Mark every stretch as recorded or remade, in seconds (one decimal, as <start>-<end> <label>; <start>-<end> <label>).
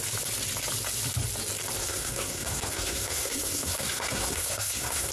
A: 0.0-1.8 recorded; 1.8-5.1 remade